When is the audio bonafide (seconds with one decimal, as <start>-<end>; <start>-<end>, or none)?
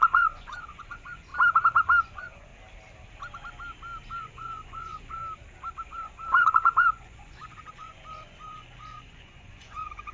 1.3-2.0; 2.5-4.2; 5.2-5.8